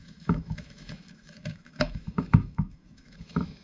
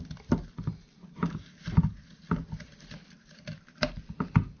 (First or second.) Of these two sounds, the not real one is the first